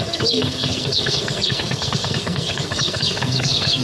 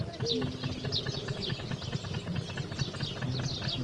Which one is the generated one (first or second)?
first